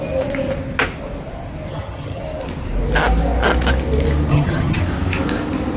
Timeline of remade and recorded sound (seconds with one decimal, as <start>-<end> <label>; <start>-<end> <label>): 0.0-1.7 recorded; 1.7-2.2 remade; 2.2-4.3 recorded; 4.3-4.8 remade; 4.8-5.8 recorded